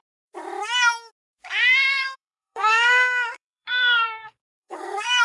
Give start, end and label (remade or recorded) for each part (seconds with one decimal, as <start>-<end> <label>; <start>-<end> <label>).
0.0-2.0 recorded; 2.0-5.2 remade